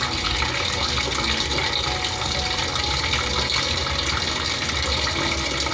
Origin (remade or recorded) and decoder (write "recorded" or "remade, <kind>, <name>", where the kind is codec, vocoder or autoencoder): recorded